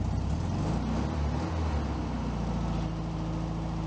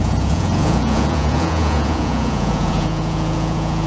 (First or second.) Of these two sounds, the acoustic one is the first